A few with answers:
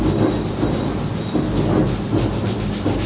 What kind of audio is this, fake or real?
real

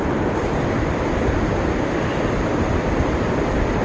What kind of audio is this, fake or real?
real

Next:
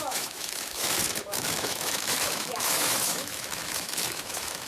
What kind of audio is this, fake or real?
fake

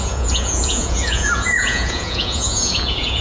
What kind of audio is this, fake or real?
fake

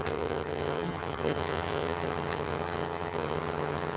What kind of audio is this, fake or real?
fake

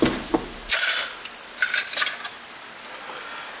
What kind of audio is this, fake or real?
real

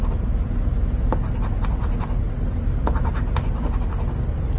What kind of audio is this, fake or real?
real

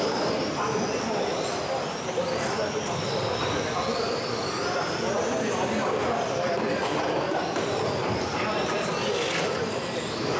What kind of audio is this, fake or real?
real